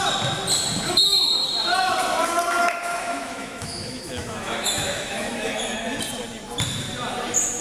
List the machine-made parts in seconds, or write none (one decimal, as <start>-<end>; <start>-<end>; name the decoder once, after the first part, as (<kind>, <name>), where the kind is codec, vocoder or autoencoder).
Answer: 2.6-5.6 (autoencoder, DAC-VAE)